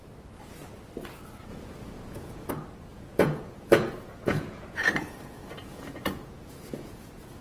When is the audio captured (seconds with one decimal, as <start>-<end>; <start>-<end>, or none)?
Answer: 0.0-1.5; 2.5-2.9